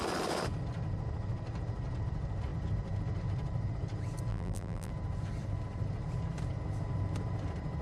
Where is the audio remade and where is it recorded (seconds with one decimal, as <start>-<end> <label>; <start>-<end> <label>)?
0.0-4.3 recorded; 4.3-4.9 remade; 4.9-7.8 recorded